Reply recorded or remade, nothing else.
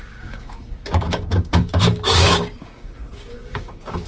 remade